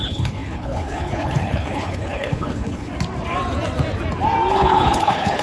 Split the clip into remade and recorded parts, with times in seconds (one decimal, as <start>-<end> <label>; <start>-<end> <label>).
0.0-2.9 remade; 2.9-4.5 recorded; 4.5-5.4 remade